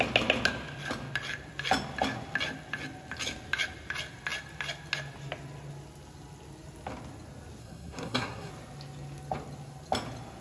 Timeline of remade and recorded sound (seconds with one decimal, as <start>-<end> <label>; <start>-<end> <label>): 0.0-7.6 recorded; 7.6-8.5 remade; 8.5-10.4 recorded